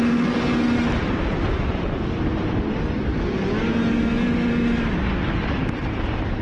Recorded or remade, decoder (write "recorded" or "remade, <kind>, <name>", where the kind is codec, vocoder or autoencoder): recorded